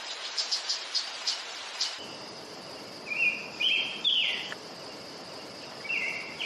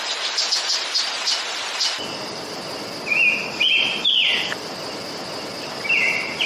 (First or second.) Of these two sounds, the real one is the second